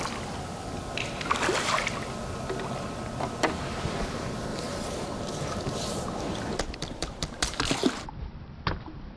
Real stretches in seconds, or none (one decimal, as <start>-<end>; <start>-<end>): 0.0-4.5; 7.6-9.2